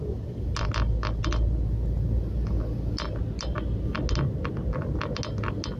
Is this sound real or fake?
real